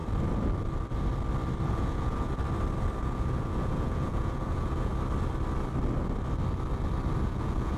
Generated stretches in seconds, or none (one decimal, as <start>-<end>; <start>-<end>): 1.7-2.3; 3.0-4.9; 7.2-7.8